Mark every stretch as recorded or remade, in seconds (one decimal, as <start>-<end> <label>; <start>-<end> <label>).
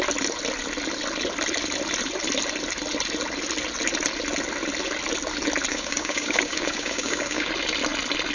0.0-5.7 recorded; 5.7-7.5 remade; 7.5-8.3 recorded